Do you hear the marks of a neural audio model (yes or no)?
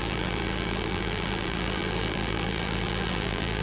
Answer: yes